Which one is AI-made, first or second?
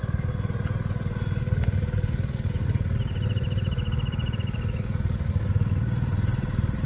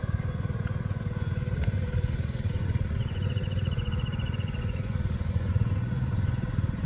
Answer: second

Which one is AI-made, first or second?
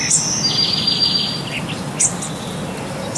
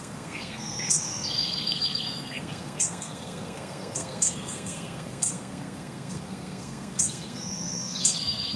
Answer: second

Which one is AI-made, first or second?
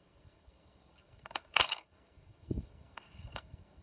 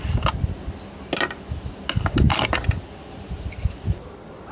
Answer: first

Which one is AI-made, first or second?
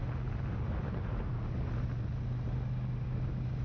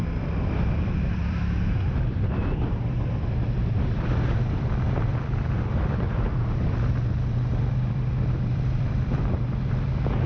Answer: second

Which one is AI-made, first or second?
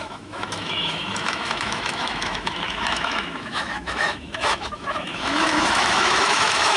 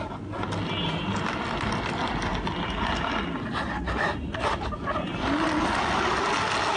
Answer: first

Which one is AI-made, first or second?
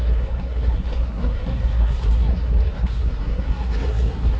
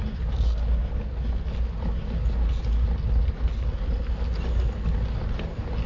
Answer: first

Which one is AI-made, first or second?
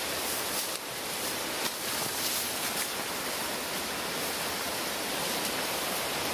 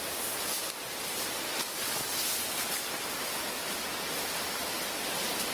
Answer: first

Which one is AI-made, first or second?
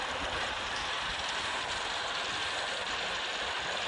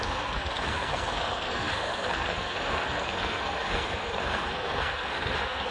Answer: second